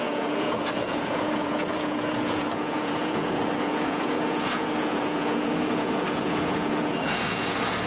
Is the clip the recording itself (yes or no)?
no